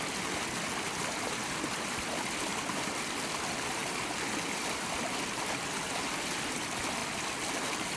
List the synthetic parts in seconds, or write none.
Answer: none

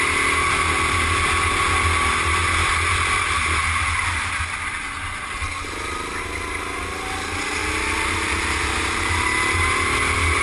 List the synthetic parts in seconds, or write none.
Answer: none

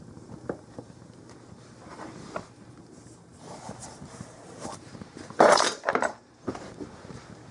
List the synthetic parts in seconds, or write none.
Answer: 0.0-7.5 (vocoder, BigVGAN v2)

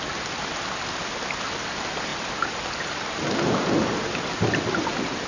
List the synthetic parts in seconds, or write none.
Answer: 2.1-3.8 (vocoder, BigVGAN v2)

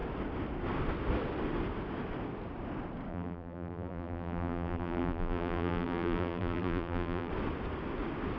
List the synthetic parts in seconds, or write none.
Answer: 3.1-7.3 (vocoder, BigVGAN v2)

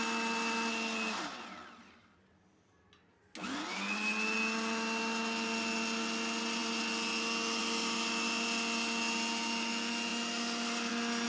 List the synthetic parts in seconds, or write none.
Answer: 10.1-10.9 (vocoder, BigVGAN v2)